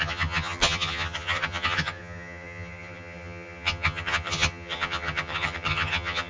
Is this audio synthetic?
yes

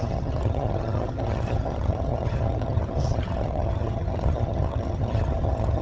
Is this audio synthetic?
yes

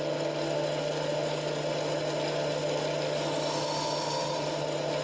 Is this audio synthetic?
no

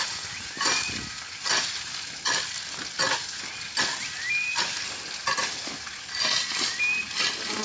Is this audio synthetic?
no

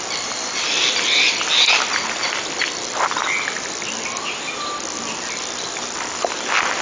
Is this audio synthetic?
no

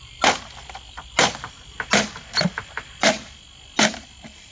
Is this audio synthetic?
no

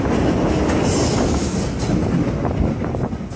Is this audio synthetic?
no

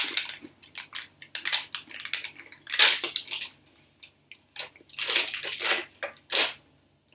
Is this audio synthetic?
no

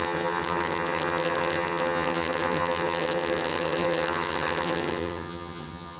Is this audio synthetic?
yes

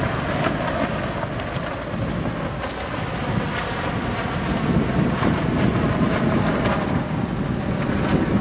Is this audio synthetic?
no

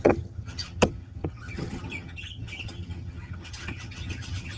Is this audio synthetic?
yes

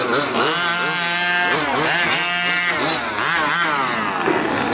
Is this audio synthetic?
no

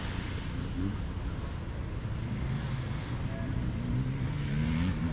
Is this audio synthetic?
no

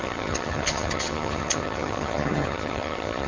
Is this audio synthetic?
yes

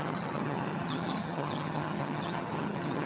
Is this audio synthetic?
yes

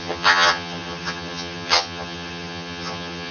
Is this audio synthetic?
yes